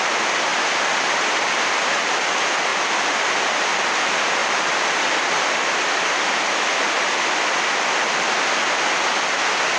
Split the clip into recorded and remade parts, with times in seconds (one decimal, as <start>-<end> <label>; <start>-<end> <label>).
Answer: 0.0-0.5 recorded; 0.5-2.3 remade; 2.3-2.7 recorded; 2.7-3.3 remade; 3.3-4.4 recorded; 4.4-8.3 remade; 8.3-9.8 recorded